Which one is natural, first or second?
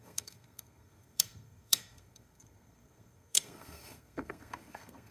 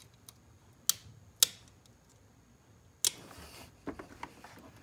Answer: second